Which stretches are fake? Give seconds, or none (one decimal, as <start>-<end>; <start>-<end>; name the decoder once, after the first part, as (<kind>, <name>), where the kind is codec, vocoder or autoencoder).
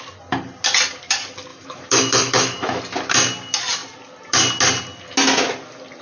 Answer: 1.5-2.8 (autoencoder, DAC-VAE)